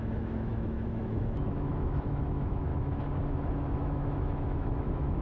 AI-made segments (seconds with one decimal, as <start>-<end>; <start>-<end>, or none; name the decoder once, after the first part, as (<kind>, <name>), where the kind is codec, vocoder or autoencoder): 0.0-2.7 (autoencoder, DAC-VAE); 3.3-5.2